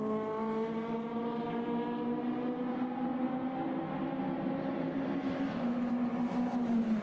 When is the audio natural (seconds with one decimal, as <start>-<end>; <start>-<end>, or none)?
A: 0.0-5.2; 5.9-7.0